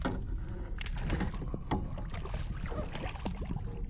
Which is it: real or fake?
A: real